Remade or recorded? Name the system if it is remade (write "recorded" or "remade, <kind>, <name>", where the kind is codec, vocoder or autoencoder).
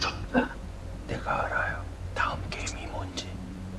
remade, vocoder, Vocos